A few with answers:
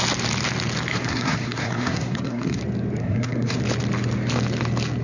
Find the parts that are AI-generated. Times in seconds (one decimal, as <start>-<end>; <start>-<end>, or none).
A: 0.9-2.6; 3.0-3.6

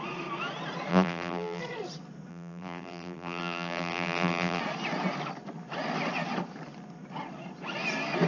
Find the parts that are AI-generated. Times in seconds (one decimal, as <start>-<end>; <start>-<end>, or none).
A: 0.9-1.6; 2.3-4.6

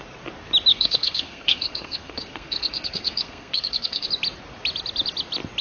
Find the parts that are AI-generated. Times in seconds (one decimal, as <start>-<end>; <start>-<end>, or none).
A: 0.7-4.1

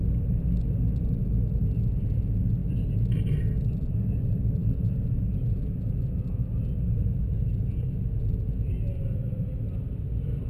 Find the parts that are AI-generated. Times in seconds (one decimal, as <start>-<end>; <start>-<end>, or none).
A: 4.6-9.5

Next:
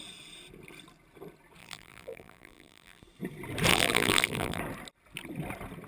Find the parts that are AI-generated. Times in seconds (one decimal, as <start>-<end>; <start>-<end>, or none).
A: 1.6-3.0; 3.7-4.6